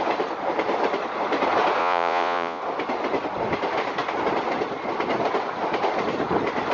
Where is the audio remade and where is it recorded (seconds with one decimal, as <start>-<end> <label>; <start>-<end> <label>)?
0.0-1.8 recorded; 1.8-2.6 remade; 2.6-6.7 recorded